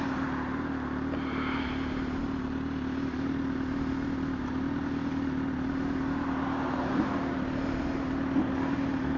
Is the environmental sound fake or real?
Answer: real